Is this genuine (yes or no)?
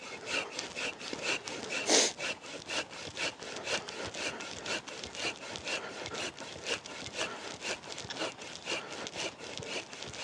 yes